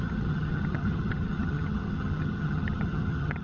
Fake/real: fake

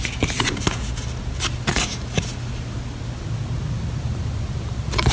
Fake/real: real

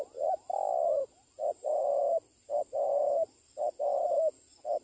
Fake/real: real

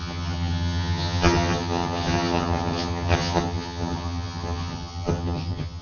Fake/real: fake